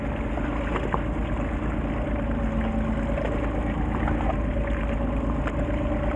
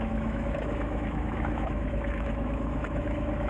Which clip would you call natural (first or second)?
first